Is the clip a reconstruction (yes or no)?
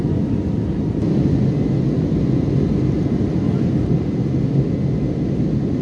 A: no